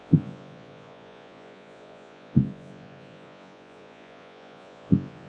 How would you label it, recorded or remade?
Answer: remade